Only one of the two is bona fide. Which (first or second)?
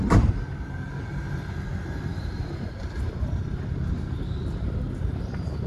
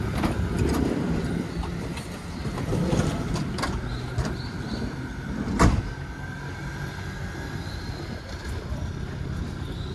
second